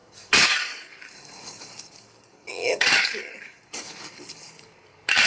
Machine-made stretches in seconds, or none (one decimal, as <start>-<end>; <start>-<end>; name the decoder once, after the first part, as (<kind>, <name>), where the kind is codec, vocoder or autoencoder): 0.0-5.3 (codec, DAC)